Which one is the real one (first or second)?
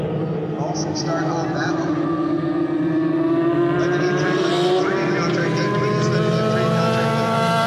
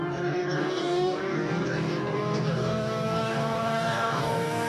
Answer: first